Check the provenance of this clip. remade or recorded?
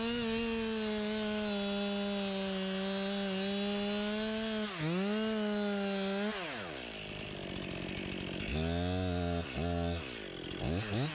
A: recorded